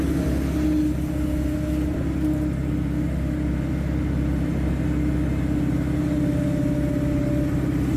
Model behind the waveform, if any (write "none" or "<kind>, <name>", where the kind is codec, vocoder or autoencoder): none